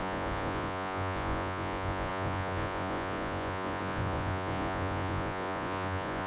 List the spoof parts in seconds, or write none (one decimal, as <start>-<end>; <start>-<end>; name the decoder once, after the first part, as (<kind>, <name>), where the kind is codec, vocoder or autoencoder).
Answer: 0.0-6.3 (vocoder, Vocos)